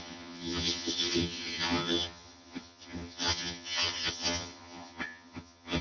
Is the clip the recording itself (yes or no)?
no